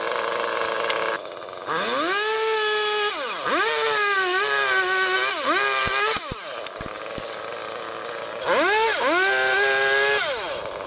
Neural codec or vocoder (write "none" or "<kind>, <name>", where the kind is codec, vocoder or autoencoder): none